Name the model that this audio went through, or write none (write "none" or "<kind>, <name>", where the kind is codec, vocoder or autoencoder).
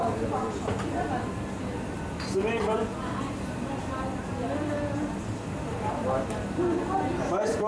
none